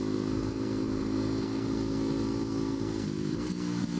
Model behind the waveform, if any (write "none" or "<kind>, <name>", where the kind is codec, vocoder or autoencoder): codec, SNAC